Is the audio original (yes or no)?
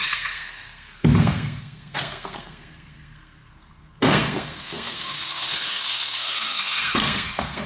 no